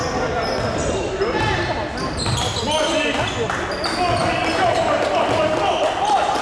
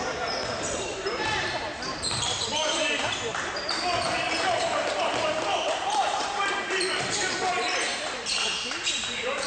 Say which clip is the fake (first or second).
second